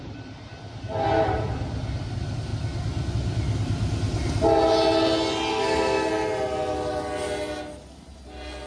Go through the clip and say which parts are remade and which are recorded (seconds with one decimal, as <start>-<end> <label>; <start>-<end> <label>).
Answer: 0.0-5.5 recorded; 5.5-6.1 remade; 6.1-8.7 recorded